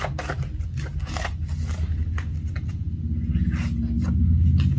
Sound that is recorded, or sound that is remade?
recorded